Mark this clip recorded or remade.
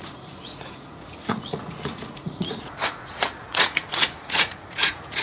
remade